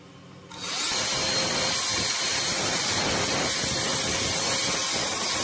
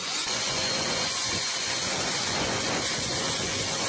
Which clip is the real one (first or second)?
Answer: first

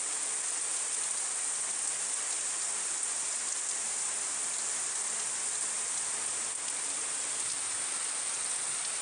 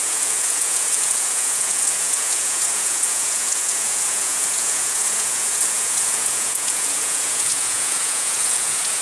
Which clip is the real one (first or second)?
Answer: first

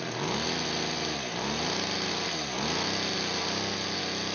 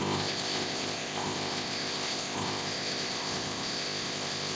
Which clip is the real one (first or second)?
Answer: first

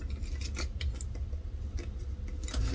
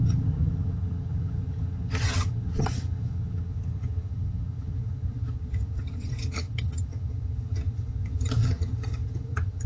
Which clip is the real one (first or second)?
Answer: first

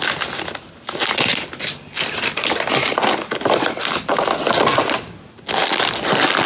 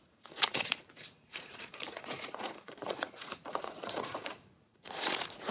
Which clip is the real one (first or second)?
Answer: first